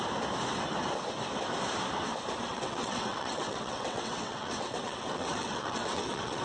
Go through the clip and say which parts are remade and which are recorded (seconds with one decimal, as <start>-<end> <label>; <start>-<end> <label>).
0.0-2.5 recorded; 2.5-6.4 remade